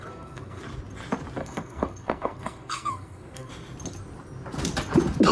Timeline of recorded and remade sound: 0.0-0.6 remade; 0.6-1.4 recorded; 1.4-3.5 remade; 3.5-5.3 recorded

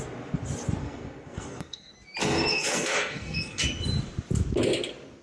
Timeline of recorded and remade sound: 0.0-0.8 recorded; 0.8-1.9 remade; 1.9-2.5 recorded; 2.5-3.6 remade; 3.6-5.2 recorded

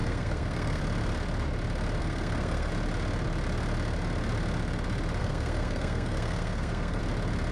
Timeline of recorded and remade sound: 0.0-0.8 remade; 0.8-2.0 recorded; 2.0-2.7 remade; 2.7-5.2 recorded; 5.2-7.0 remade; 7.0-7.5 recorded

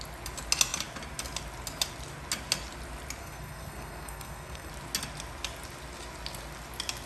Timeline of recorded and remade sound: 0.0-3.2 recorded; 3.2-4.7 remade; 4.7-7.1 recorded